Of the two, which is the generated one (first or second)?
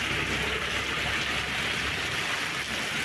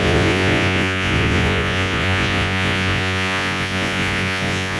second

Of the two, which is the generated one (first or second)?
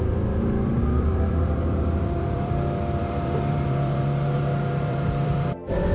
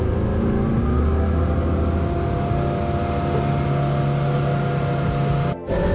first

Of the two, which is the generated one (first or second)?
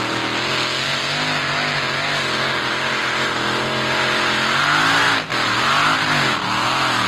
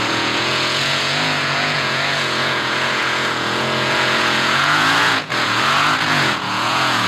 second